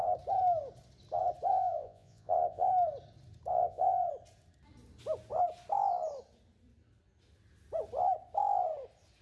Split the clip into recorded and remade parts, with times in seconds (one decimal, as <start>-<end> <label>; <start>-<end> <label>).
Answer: 0.0-1.5 recorded; 1.5-2.7 remade; 2.7-3.5 recorded; 3.5-4.1 remade; 4.1-9.2 recorded